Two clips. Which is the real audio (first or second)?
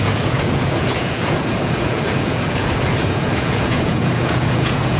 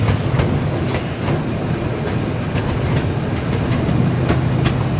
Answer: second